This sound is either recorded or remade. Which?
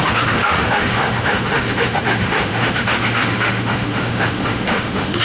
remade